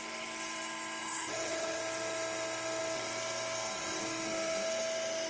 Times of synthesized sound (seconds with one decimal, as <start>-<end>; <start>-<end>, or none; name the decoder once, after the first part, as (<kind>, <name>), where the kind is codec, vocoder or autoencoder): 1.0-1.8 (codec, HILCodec)